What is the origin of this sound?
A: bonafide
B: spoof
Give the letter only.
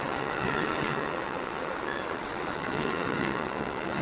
B